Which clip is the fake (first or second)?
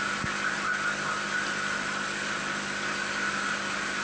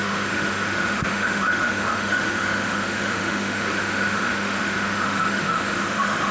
second